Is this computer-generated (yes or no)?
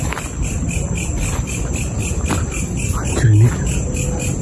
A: no